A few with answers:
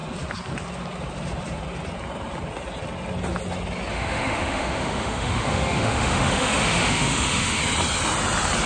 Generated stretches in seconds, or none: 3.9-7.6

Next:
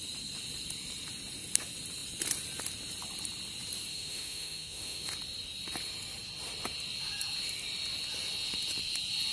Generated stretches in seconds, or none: 3.9-5.1

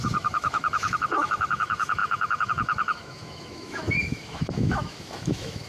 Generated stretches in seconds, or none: 0.0-5.7

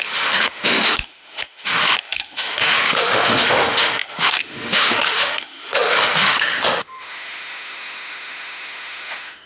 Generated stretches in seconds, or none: 0.0-9.5

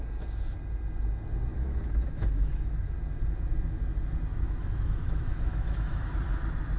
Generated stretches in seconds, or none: 1.5-2.9; 4.3-6.1

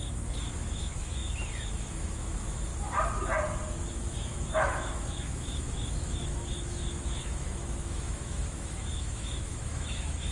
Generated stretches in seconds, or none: 0.0-2.7; 3.9-10.3